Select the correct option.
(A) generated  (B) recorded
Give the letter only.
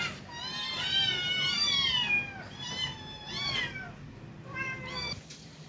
B